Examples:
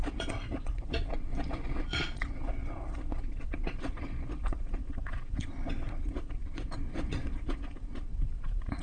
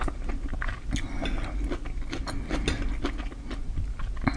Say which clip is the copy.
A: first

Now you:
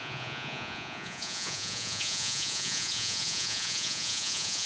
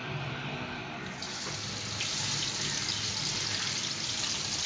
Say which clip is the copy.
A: first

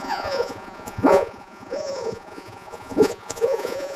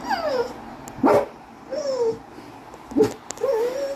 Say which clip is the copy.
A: first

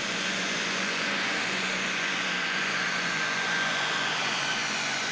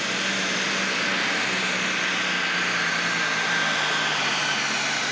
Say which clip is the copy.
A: first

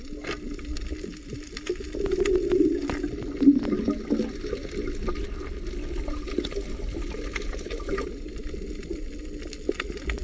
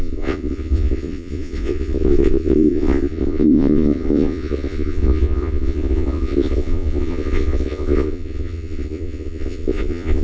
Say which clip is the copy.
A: second